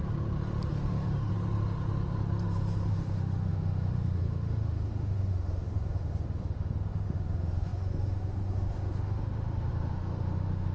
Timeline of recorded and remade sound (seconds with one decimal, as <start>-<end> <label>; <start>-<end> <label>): 0.0-0.7 recorded; 0.7-1.3 remade; 1.3-2.9 recorded; 2.9-10.7 remade